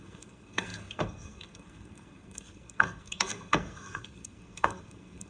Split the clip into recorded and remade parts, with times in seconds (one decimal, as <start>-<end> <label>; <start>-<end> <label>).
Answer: 0.0-5.3 remade